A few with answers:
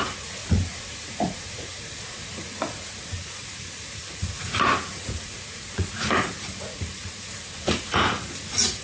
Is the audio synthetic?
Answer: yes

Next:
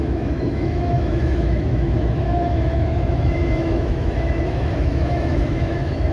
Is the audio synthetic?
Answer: yes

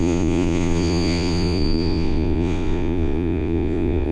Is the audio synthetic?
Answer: yes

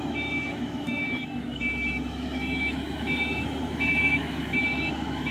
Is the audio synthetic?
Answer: yes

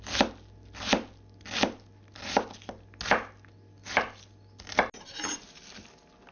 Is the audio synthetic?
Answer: no